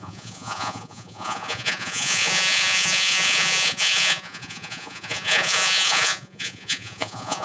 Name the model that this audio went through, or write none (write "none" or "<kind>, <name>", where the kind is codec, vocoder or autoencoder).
vocoder, Vocos